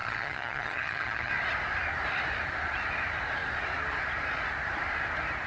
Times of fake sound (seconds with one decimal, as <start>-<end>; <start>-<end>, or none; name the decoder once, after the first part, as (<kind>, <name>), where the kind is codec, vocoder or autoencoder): 0.0-1.3 (vocoder, HiFi-GAN)